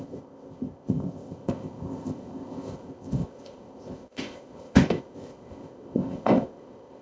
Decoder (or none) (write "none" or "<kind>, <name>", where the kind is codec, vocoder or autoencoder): codec, ZipCodec